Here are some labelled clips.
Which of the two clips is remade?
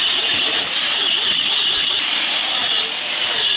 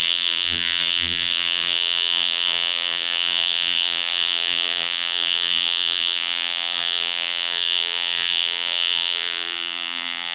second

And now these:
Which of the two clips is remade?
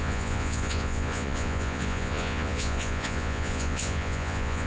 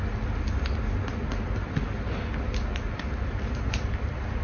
first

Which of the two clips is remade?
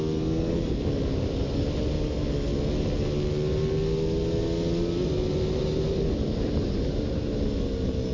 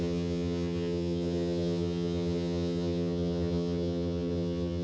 second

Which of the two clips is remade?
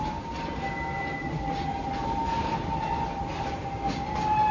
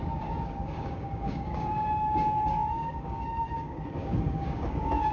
second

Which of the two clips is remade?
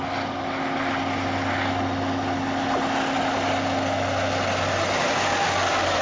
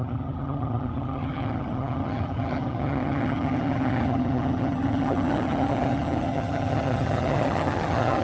second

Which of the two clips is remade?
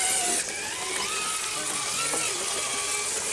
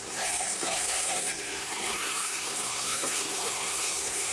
second